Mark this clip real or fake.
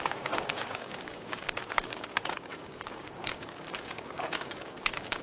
fake